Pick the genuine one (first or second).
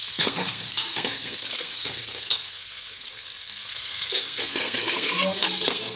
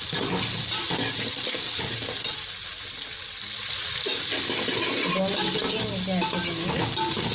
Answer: second